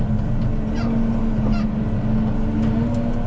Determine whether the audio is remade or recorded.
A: recorded